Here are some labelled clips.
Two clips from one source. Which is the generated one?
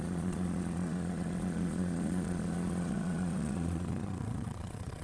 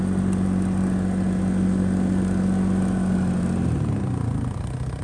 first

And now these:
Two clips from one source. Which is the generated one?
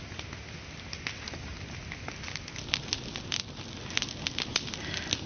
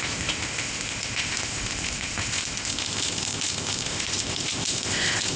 second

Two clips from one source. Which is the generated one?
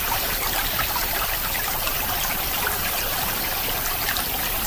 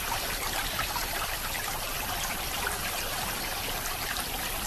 first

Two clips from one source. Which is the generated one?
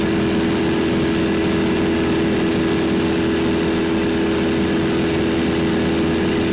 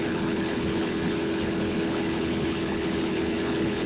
second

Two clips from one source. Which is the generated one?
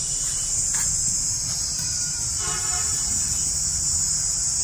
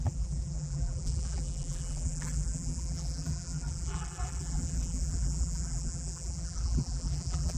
second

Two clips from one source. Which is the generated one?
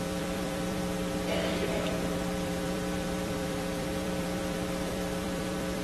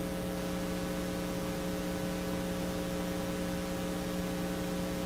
first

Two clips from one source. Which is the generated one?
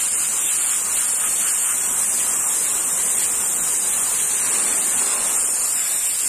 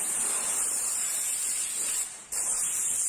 second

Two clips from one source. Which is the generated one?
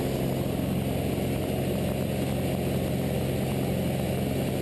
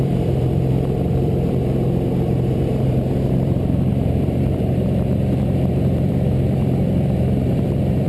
second